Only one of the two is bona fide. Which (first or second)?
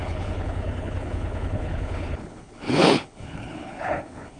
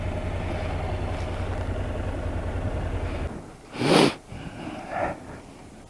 second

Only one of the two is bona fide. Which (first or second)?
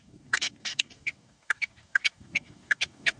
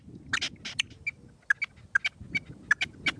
second